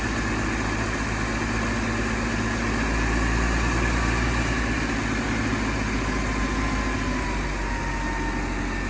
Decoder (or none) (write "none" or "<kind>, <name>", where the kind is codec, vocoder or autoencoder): none